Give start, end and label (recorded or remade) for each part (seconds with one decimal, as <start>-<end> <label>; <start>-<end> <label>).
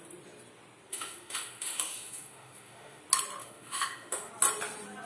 0.0-0.9 recorded; 0.9-3.0 remade; 3.0-3.4 recorded; 3.4-4.3 remade; 4.3-5.1 recorded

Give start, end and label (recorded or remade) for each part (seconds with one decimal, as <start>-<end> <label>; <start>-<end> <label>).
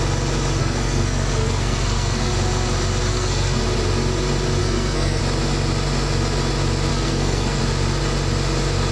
0.0-0.6 recorded; 0.6-2.3 remade; 2.3-3.1 recorded; 3.1-3.6 remade; 3.6-4.6 recorded; 4.6-5.2 remade; 5.2-6.9 recorded; 6.9-7.6 remade; 7.6-8.9 recorded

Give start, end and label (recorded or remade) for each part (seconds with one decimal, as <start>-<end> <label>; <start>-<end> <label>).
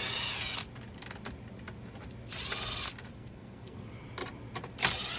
0.0-3.1 recorded; 3.1-3.9 remade; 3.9-5.2 recorded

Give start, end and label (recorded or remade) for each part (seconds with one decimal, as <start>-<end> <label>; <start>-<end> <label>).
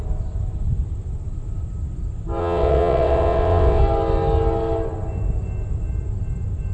0.0-2.4 recorded; 2.4-3.8 remade; 3.8-6.7 recorded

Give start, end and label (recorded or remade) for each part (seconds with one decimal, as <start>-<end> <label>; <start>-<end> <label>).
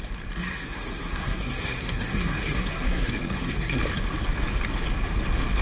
0.0-0.4 recorded; 0.4-3.8 remade; 3.8-5.6 recorded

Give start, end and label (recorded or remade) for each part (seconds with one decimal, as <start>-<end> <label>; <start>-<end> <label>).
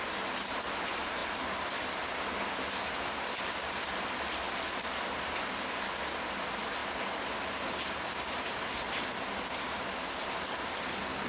0.0-11.3 recorded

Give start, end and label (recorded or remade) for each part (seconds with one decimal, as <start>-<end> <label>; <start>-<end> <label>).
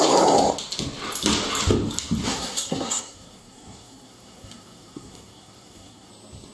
0.0-2.2 recorded; 2.2-6.1 remade; 6.1-6.5 recorded